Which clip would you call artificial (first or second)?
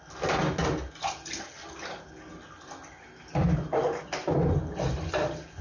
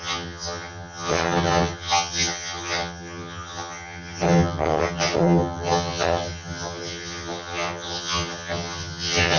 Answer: second